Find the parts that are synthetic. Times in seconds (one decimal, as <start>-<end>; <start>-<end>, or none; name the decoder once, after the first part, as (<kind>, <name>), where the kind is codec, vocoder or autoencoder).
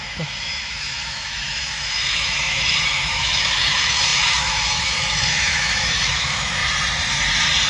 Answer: 0.0-6.6 (autoencoder, DAC-VAE)